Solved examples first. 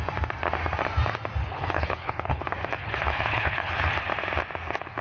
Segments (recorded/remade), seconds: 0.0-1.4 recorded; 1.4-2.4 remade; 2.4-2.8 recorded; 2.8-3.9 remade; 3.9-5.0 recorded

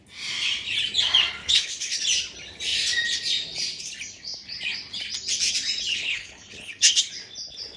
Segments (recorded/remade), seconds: 0.0-1.4 recorded; 1.4-2.0 remade; 2.0-5.9 recorded; 5.9-7.1 remade; 7.1-7.8 recorded

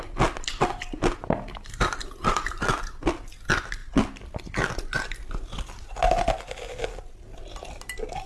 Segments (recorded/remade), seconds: 0.0-8.3 recorded

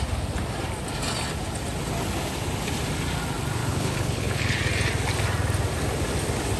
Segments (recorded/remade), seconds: 0.0-3.6 recorded; 3.6-4.6 remade; 4.6-6.6 recorded

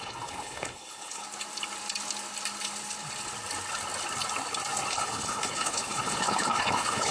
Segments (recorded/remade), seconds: 0.0-1.2 remade; 1.2-4.9 recorded; 4.9-7.1 remade

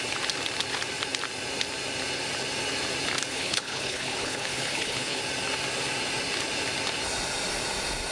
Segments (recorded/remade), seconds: 0.0-3.3 recorded; 3.3-5.2 remade; 5.2-8.1 recorded

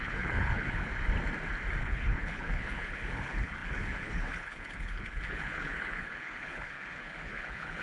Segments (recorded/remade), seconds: 0.0-0.9 remade; 0.9-1.8 recorded; 1.8-7.8 remade